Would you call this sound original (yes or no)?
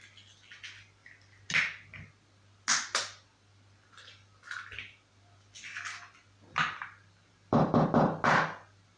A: yes